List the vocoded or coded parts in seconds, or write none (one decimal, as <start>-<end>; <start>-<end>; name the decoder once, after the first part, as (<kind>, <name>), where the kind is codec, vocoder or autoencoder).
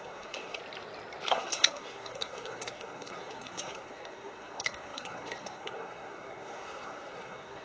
0.0-0.6 (codec, SNAC); 1.3-7.6